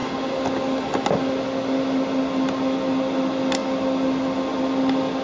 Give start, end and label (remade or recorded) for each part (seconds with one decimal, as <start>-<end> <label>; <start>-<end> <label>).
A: 0.0-5.2 recorded